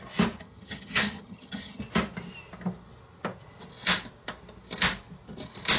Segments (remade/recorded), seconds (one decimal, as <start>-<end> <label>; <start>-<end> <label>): 0.0-0.4 recorded; 0.4-1.8 remade; 1.8-5.8 recorded